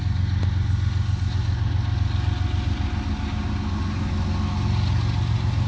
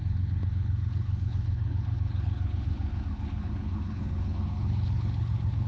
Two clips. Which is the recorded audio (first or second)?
first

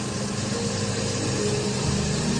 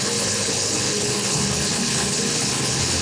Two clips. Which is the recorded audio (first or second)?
first